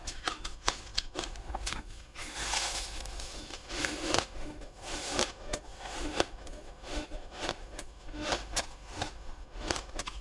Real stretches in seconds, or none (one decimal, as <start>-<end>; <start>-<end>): none